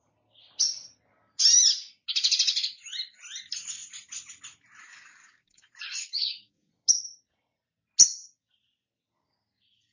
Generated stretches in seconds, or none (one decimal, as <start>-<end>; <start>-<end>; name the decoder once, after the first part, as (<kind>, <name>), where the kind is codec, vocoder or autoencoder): 4.8-6.7 (codec, DAC)